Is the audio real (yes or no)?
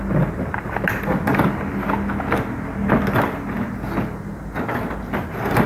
yes